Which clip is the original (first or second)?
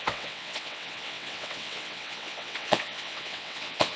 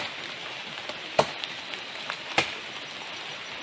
second